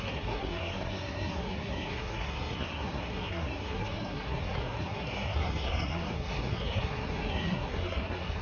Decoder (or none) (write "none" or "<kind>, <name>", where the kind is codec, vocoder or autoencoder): codec, SNAC